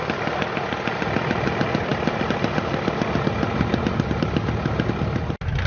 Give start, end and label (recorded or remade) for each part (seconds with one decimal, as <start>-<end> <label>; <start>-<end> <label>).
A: 0.0-5.7 recorded